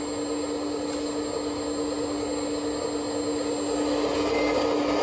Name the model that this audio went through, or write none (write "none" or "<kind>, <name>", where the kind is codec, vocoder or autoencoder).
none